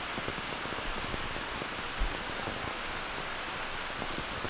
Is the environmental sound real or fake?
real